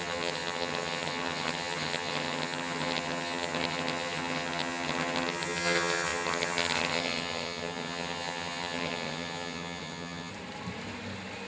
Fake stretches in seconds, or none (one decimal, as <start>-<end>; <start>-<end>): 0.0-10.3